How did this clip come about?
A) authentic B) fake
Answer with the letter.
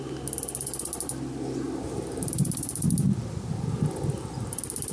A